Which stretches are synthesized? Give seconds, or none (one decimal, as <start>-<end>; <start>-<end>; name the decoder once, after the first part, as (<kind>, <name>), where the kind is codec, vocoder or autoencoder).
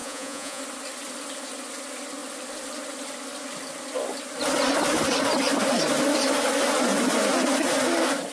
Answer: 0.0-0.6 (vocoder, Vocos)